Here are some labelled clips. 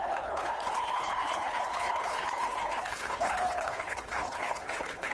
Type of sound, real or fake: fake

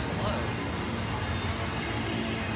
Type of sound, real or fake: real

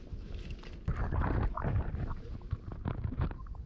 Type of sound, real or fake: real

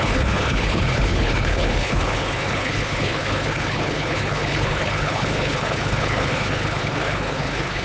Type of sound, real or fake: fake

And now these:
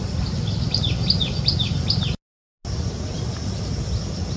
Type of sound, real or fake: real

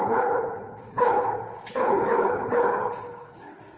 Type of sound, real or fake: fake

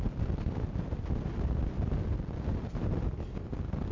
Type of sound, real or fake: real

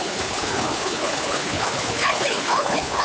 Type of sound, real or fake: fake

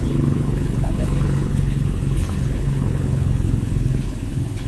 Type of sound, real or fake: fake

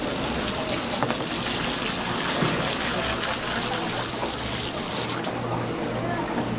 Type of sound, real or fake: real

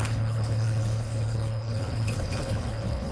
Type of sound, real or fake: fake